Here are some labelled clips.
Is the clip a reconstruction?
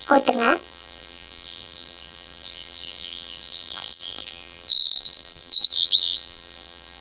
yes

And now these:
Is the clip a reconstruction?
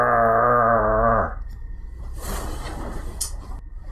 no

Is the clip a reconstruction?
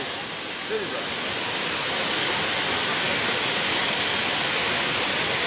no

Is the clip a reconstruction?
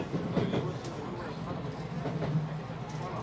no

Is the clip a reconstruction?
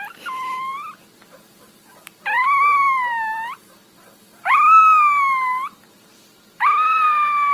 no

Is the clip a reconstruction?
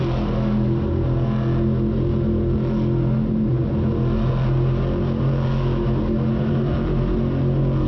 no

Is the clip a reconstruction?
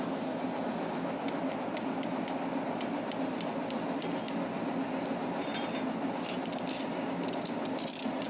no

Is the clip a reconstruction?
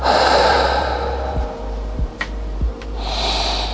yes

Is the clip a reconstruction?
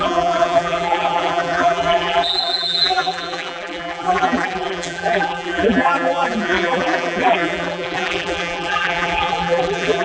yes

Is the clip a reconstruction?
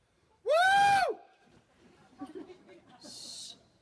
yes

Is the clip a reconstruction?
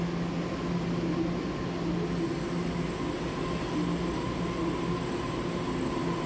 no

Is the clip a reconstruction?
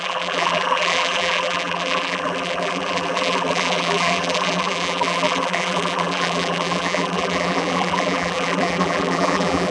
yes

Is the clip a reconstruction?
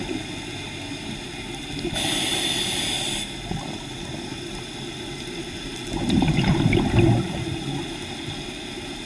no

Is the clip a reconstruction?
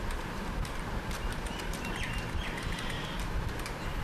no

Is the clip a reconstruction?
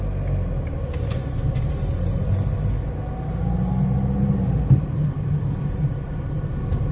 no